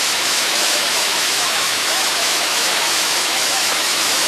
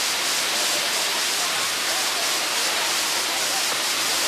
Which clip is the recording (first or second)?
second